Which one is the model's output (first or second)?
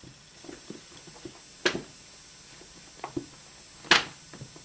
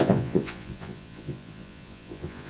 second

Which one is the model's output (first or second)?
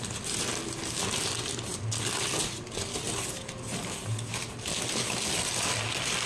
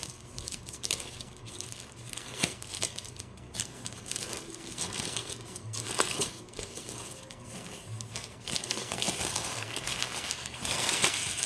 second